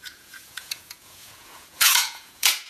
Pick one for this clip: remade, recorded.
remade